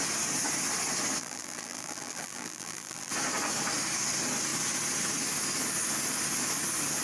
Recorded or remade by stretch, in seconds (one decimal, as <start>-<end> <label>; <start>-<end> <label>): 0.0-1.2 recorded; 1.2-3.1 remade; 3.1-7.0 recorded